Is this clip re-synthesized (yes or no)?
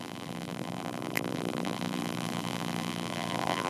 yes